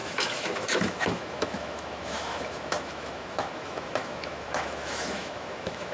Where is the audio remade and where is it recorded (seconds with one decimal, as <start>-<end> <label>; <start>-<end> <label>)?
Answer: 0.0-5.9 remade